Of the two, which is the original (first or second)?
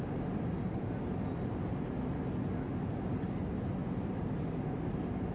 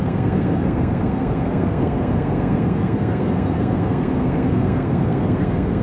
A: first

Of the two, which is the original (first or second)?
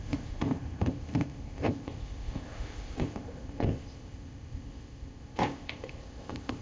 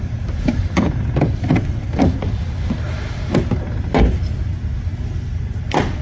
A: second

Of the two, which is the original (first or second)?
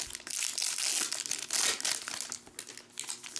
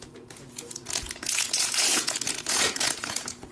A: first